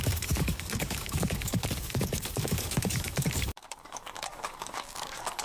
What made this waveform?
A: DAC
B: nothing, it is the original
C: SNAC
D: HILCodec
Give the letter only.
A